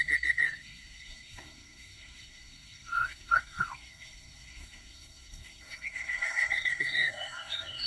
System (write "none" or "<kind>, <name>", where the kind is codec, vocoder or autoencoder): codec, SNAC